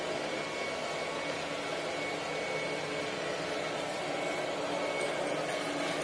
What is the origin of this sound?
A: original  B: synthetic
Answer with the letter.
A